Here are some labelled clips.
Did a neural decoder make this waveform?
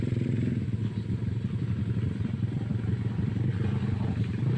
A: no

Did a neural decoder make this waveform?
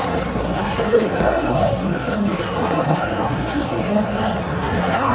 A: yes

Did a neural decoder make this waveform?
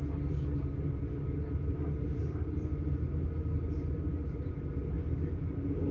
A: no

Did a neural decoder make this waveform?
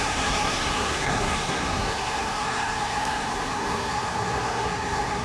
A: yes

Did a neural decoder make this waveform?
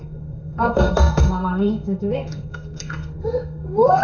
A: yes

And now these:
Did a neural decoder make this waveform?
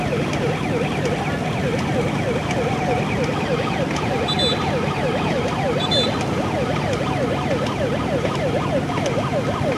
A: no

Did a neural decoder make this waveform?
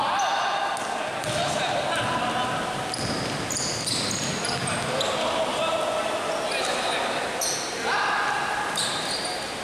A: no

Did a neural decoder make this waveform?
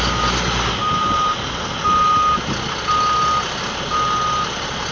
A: no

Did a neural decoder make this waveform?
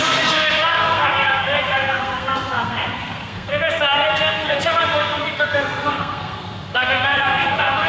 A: yes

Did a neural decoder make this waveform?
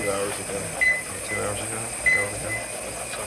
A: no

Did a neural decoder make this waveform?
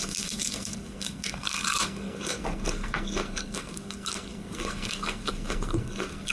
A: yes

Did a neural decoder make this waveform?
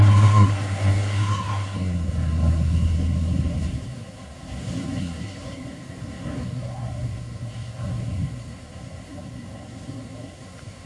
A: yes